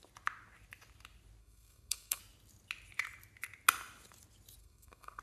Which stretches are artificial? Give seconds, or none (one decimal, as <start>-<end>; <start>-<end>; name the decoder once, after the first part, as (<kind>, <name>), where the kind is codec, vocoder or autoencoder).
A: 1.4-2.2 (codec, SNAC); 4.6-5.2